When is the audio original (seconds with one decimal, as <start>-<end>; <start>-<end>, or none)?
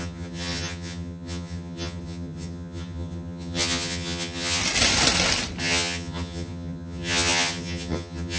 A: 4.6-5.6